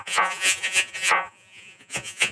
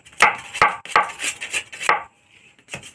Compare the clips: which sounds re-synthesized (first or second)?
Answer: first